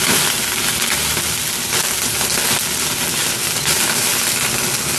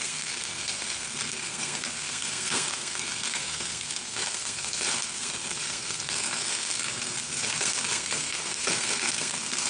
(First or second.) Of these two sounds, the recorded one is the first